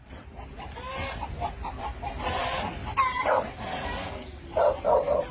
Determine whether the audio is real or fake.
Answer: real